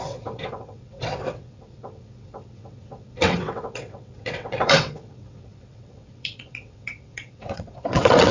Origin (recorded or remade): remade